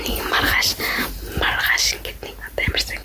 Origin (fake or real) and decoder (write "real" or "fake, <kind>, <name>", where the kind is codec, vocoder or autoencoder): real